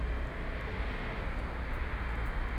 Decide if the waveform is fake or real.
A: real